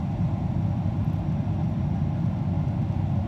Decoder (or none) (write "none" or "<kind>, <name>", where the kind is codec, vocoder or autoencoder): none